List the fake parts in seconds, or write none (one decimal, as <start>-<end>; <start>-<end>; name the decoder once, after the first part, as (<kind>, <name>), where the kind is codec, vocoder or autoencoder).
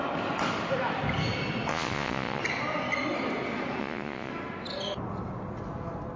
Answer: 1.7-2.4 (vocoder, Vocos); 3.8-4.3